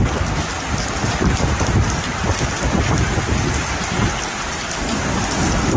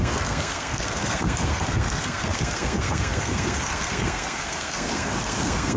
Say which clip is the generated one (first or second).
second